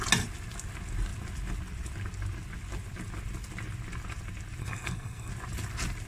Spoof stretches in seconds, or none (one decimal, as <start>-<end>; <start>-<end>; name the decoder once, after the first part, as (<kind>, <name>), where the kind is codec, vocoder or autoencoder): 4.6-5.3 (codec, SNAC)